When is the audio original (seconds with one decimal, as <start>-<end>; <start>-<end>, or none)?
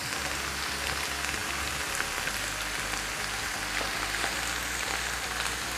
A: 0.0-5.8